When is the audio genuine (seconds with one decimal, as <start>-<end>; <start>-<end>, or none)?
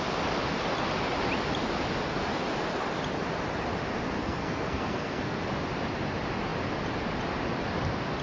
0.0-4.2; 5.4-8.2